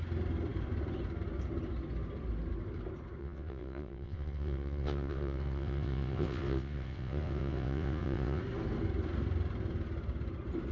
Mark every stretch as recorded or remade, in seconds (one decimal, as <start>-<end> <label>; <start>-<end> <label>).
0.0-3.2 recorded; 3.2-8.4 remade; 8.4-10.7 recorded